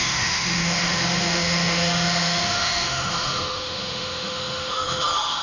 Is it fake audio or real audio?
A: fake